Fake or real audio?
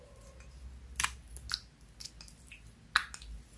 real